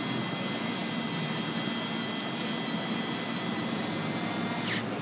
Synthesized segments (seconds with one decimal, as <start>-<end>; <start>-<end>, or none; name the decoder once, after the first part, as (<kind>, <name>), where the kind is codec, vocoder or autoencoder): none